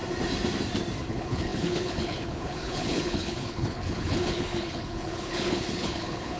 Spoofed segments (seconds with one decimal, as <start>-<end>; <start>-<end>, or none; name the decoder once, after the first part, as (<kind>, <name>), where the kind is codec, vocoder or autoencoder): 1.1-6.4 (codec, HILCodec)

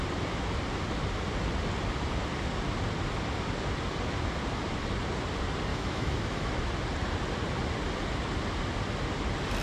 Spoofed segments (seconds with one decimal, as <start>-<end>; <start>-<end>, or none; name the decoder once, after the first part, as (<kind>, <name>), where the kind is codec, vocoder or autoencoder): 5.7-6.5 (autoencoder, DAC-VAE)

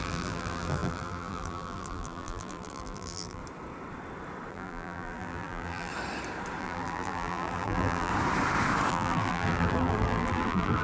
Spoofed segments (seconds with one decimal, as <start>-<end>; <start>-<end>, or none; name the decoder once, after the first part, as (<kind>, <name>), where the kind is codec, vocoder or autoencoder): 0.0-3.4 (vocoder, BigVGAN v2); 4.5-5.9; 6.6-8.1; 8.9-10.8